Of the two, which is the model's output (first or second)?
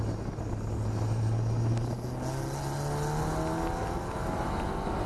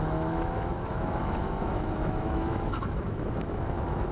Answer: second